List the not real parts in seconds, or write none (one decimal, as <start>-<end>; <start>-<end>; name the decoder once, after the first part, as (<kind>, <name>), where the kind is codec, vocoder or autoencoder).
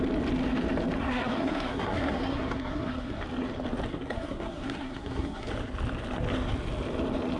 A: 1.0-3.2 (codec, SNAC); 3.9-5.5